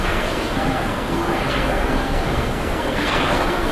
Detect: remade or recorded remade